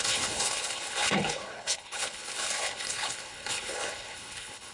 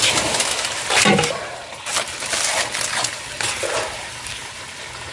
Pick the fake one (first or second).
first